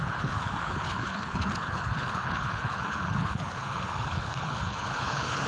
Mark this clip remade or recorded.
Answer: remade